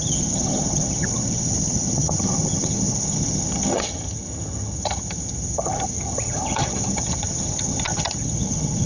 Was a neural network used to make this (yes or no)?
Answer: yes